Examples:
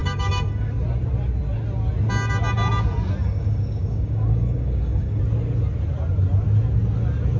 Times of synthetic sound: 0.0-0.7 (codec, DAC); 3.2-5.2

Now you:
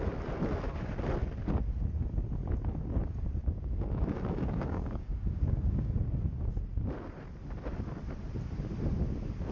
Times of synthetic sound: 3.4-6.0 (codec, DAC)

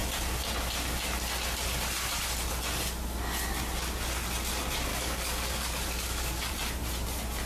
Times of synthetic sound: 4.9-6.5 (codec, DAC)

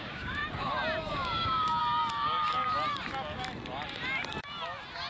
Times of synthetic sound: 0.0-0.4 (codec, DAC); 1.1-1.8

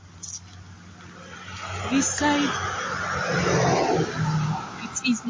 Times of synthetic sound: none

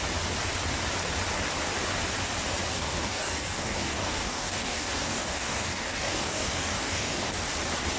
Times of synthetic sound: 2.7-7.3 (codec, DAC)

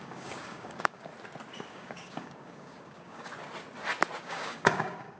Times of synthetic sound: 0.0-1.1 (codec, DAC); 1.7-3.3; 4.2-5.2